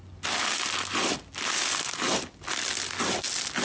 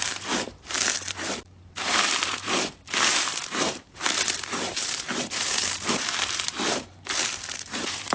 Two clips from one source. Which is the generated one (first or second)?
second